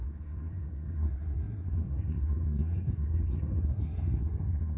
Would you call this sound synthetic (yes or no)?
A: yes